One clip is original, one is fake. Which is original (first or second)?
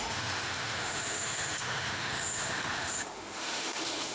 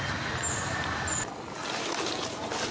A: second